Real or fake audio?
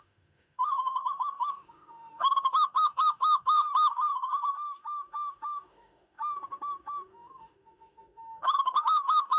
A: fake